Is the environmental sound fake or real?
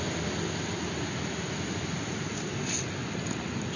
real